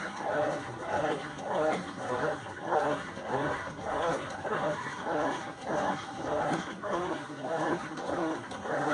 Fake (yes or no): yes